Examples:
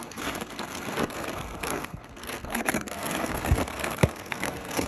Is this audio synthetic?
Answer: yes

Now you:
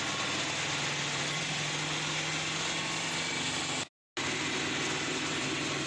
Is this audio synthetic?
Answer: no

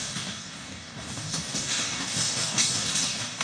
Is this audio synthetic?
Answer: yes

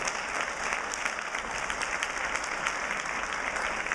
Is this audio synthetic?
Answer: no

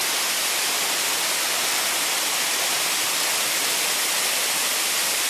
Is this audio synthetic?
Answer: no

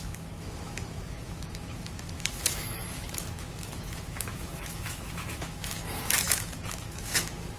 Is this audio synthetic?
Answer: yes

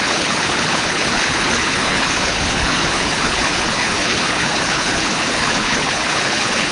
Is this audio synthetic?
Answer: yes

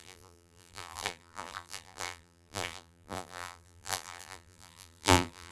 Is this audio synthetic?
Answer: yes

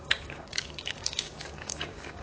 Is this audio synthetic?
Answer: yes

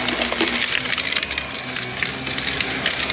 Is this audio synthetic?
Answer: no